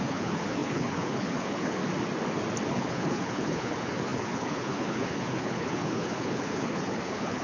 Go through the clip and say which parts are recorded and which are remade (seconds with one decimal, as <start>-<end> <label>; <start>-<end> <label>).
0.0-1.8 remade; 1.8-2.7 recorded; 2.7-7.4 remade